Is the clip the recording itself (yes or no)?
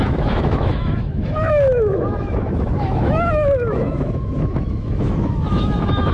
no